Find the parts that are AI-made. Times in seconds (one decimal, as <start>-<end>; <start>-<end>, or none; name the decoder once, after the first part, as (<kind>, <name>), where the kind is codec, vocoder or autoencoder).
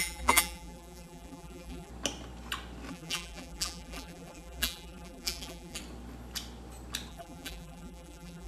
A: 0.0-1.9 (vocoder, BigVGAN v2); 2.9-5.8; 7.1-8.5